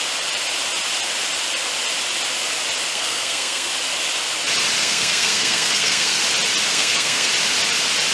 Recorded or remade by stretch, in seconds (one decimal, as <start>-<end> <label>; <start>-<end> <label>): 0.0-2.9 recorded; 2.9-3.7 remade; 3.7-4.8 recorded; 4.8-6.2 remade; 6.2-6.7 recorded; 6.7-7.3 remade; 7.3-8.1 recorded